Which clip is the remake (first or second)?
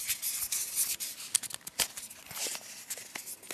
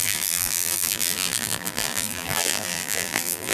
second